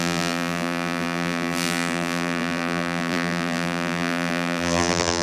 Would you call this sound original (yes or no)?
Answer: no